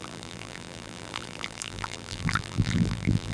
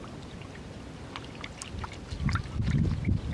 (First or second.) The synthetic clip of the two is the first